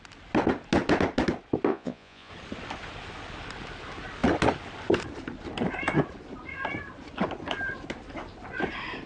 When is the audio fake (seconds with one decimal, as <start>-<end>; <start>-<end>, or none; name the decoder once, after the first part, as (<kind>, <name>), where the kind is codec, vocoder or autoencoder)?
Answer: 1.7-2.3 (vocoder, Vocos)